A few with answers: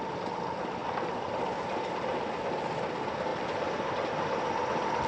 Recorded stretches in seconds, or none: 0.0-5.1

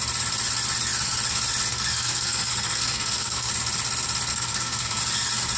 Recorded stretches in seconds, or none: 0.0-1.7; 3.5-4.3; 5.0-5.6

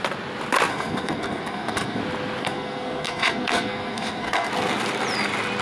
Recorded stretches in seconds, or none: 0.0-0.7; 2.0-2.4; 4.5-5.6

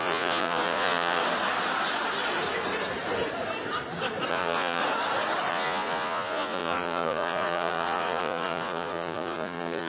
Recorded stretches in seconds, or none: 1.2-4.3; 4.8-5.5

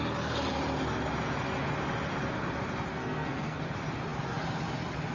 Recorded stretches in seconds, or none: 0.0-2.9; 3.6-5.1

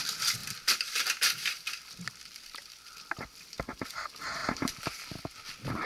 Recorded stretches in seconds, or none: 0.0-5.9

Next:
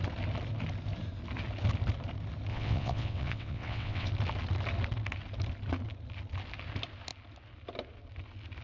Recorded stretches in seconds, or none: 0.0-2.5; 4.1-8.6

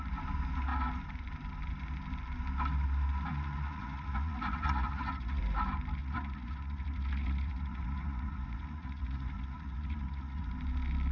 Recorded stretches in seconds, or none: 0.0-3.3; 5.4-6.0; 10.4-11.1